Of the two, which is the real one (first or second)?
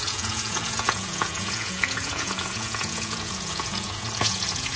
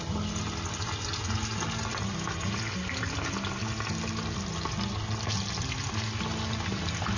second